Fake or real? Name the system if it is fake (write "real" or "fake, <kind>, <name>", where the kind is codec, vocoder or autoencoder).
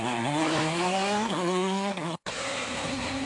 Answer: fake, codec, SNAC